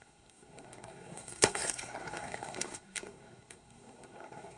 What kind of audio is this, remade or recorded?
remade